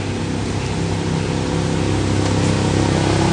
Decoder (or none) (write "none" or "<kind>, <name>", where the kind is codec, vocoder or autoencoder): none